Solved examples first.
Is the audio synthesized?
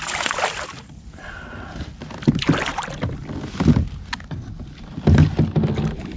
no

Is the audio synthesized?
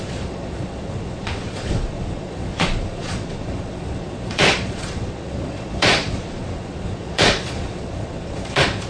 yes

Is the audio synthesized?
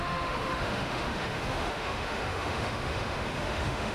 yes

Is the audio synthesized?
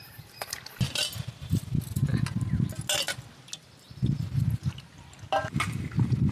no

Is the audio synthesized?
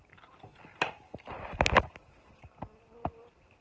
yes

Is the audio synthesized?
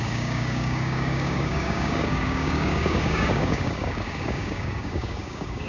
yes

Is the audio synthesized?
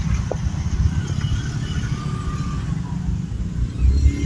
no